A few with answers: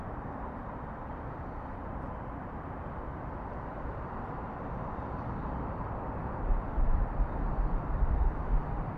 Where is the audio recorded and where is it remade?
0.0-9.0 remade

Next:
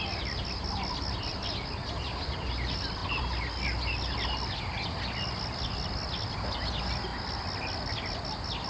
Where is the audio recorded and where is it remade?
0.0-8.7 recorded